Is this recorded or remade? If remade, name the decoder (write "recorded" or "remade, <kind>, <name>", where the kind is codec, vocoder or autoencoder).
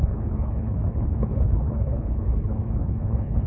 remade, codec, HILCodec